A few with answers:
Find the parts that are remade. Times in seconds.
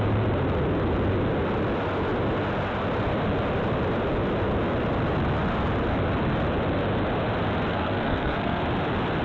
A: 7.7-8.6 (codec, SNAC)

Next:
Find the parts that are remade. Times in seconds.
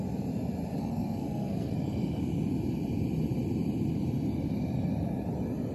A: 0.8-1.7 (codec, SNAC)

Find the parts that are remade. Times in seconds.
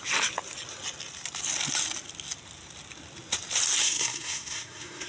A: 3.8-5.1 (codec, SNAC)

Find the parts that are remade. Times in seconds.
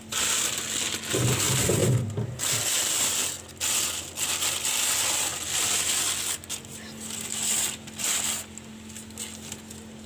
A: none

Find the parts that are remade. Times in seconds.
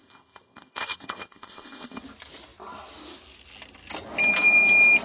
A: 0.0-2.0 (codec, ZipCodec)